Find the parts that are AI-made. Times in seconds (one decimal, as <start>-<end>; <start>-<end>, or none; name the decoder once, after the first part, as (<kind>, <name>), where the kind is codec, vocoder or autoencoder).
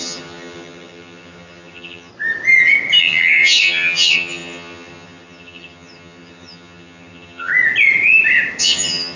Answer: 0.0-2.1 (vocoder, HiFi-GAN); 3.0-7.5; 8.6-9.2